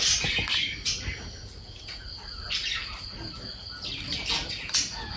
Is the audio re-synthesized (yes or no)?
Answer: no